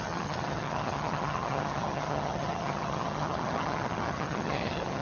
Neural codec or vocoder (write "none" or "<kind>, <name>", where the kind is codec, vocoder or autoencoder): vocoder, HiFi-GAN